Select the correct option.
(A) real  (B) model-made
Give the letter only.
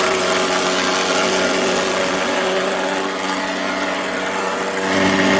A